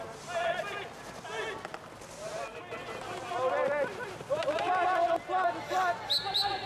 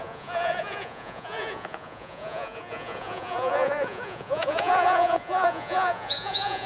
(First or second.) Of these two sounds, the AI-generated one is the second